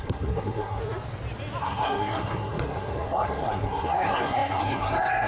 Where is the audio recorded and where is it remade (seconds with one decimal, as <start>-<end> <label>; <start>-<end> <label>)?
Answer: 0.0-0.8 remade; 0.8-1.6 recorded; 1.6-5.3 remade